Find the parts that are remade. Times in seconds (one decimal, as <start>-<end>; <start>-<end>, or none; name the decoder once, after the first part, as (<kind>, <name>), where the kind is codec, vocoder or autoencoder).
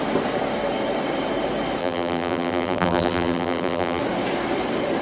1.8-4.0 (vocoder, BigVGAN v2)